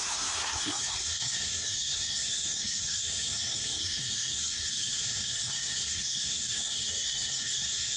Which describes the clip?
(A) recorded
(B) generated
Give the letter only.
B